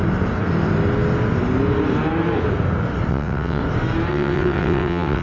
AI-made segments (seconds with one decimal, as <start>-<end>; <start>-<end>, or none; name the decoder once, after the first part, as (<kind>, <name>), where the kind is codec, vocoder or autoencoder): 3.1-3.6 (vocoder, WaveNeXt); 4.1-5.2